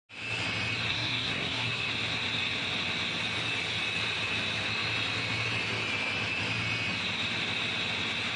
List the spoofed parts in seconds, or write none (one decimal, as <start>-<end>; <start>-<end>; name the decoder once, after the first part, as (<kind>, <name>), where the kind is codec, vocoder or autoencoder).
0.9-1.9 (codec, SNAC)